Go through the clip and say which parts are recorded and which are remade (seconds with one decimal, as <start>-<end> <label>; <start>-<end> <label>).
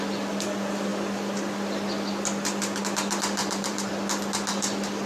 0.0-3.4 recorded; 3.4-3.9 remade; 3.9-5.1 recorded